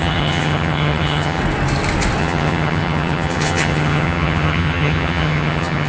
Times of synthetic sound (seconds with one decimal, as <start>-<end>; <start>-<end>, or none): 0.0-1.4; 2.2-5.9